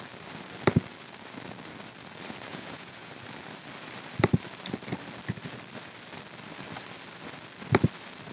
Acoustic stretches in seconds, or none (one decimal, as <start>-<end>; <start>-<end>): 0.0-2.5; 3.1-8.3